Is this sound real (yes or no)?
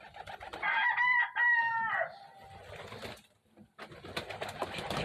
yes